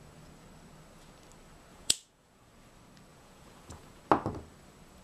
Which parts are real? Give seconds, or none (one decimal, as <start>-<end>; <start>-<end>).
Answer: 0.0-1.7; 2.5-3.1; 4.0-5.0